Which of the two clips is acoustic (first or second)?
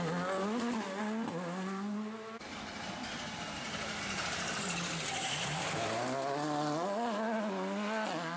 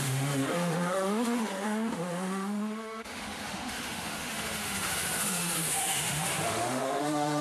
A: first